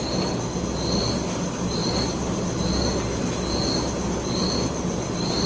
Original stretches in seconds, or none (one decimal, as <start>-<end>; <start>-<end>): 0.0-5.5